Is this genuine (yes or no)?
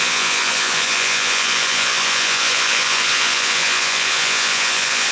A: no